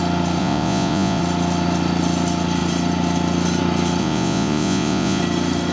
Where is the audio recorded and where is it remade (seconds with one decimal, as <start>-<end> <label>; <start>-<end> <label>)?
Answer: 0.0-0.4 recorded; 0.4-1.2 remade; 1.2-4.0 recorded; 4.0-5.2 remade; 5.2-5.7 recorded

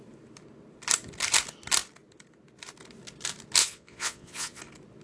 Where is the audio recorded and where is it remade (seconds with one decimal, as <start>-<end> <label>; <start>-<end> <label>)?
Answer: 0.0-3.6 recorded; 3.6-4.6 remade; 4.6-5.0 recorded